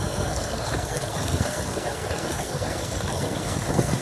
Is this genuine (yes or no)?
no